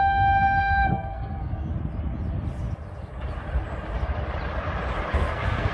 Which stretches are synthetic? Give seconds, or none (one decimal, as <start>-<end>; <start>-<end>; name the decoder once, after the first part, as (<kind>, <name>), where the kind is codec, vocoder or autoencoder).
0.0-1.7 (codec, SNAC); 5.1-5.7

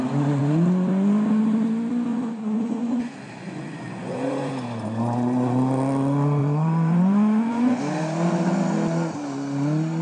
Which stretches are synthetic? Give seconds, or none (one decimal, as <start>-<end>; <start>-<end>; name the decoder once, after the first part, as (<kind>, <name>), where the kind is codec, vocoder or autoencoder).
2.1-4.5 (vocoder, Vocos); 6.4-7.8

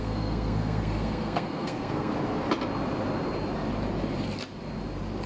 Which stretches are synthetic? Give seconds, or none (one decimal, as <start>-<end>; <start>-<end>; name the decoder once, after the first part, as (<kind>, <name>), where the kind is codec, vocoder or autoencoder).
0.0-2.1 (codec, SNAC)

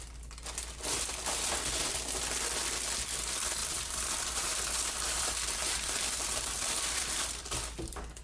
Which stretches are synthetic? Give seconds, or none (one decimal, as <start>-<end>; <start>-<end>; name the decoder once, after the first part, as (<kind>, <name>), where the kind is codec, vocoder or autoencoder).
3.6-7.5 (vocoder, BigVGAN v2)

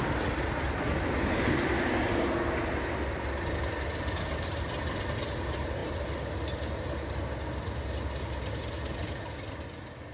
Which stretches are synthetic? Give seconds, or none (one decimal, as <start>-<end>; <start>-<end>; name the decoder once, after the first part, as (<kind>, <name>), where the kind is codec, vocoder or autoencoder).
none